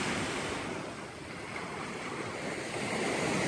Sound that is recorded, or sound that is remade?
recorded